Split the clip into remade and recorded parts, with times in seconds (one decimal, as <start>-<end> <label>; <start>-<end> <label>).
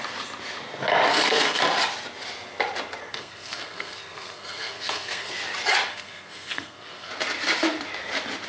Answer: 0.0-1.1 recorded; 1.1-1.6 remade; 1.6-3.1 recorded; 3.1-5.3 remade; 5.3-5.9 recorded; 5.9-7.1 remade; 7.1-8.5 recorded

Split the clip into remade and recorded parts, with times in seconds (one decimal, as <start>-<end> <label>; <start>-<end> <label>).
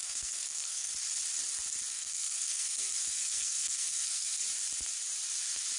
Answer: 0.0-0.9 remade; 0.9-1.9 recorded; 1.9-4.4 remade; 4.4-5.8 recorded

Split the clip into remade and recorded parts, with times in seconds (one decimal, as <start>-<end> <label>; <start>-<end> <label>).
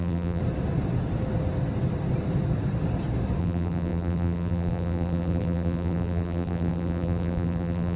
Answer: 0.0-0.4 remade; 0.4-3.4 recorded; 3.4-8.0 remade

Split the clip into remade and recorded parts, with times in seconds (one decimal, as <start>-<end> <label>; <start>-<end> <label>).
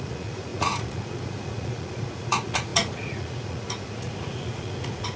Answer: 0.0-5.2 remade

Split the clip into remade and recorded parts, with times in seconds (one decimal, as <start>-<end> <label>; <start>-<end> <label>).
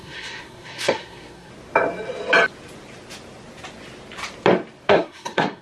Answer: 0.0-1.5 remade; 1.5-4.9 recorded; 4.9-5.6 remade